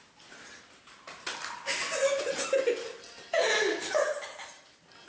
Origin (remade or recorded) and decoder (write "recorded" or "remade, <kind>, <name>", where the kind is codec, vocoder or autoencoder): recorded